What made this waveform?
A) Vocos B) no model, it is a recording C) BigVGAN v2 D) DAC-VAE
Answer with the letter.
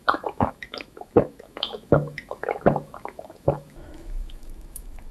D